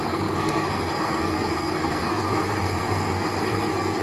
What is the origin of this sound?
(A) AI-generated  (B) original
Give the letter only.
A